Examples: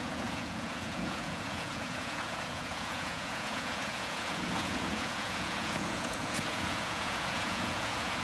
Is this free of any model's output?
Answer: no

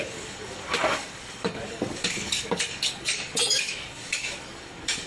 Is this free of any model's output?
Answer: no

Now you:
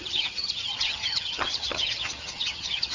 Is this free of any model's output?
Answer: no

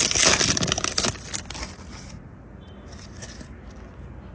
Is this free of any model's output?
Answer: yes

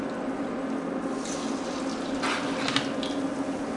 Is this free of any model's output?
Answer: yes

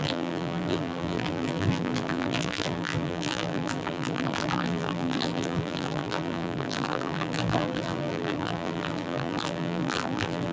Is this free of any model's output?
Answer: no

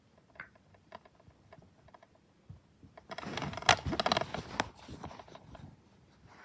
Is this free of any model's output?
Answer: yes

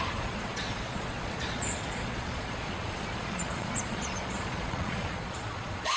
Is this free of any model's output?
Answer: no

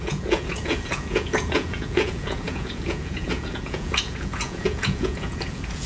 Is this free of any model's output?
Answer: no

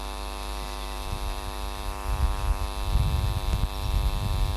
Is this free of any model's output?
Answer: yes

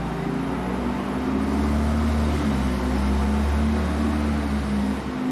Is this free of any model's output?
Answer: yes